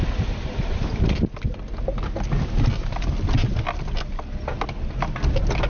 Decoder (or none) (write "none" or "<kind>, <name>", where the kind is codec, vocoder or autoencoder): none